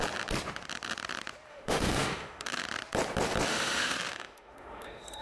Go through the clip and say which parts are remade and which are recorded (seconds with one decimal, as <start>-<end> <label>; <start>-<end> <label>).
0.0-1.5 recorded; 1.5-2.6 remade; 2.6-3.5 recorded; 3.5-5.2 remade